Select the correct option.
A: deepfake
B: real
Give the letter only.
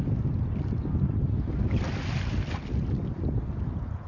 B